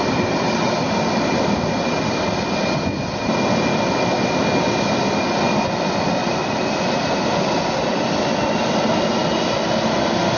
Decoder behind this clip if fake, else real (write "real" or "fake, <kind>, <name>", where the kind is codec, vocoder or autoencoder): real